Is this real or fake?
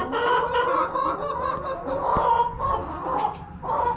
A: real